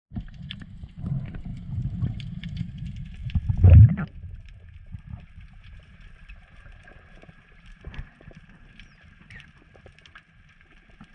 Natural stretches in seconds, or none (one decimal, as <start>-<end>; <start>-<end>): 3.2-4.4